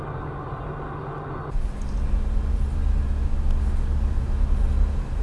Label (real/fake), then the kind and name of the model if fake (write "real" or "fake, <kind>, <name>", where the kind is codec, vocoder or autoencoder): real